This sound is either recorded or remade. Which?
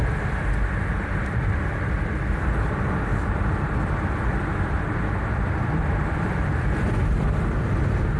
remade